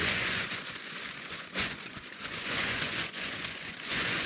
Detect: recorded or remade remade